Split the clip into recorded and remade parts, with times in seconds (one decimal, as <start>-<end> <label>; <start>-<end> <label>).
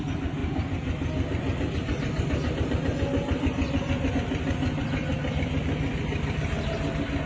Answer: 0.0-7.3 recorded